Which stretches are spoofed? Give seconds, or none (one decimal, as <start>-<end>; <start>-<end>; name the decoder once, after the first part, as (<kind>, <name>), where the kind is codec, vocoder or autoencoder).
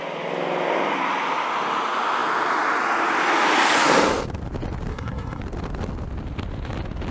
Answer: 4.9-5.4 (codec, SNAC)